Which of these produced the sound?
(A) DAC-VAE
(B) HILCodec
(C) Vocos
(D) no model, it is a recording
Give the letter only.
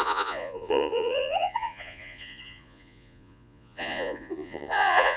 C